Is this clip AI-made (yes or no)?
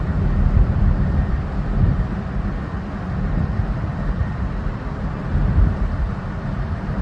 yes